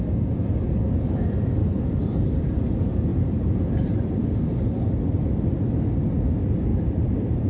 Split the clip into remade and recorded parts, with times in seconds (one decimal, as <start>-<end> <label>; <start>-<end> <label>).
0.0-1.6 recorded; 1.6-2.6 remade; 2.6-3.1 recorded; 3.1-4.6 remade; 4.6-6.7 recorded; 6.7-7.5 remade